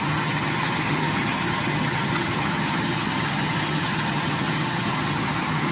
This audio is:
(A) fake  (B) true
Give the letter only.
A